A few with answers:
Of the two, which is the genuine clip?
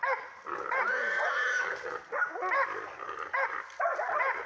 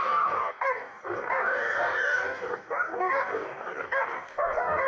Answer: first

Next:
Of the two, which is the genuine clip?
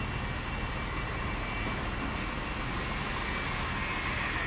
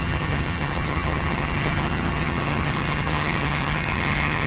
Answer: first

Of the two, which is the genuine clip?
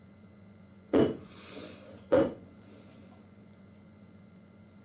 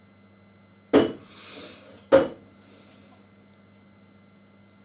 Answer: second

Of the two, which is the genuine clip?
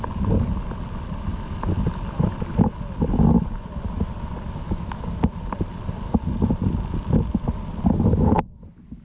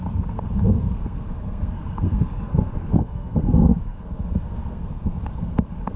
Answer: first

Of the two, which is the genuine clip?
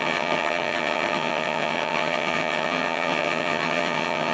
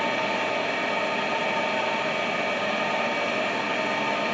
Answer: second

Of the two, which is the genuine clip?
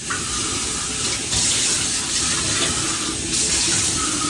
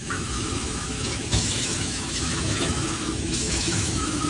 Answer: first